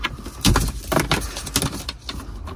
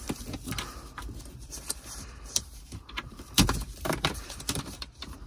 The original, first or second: first